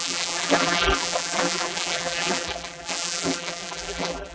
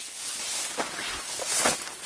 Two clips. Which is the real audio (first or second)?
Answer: second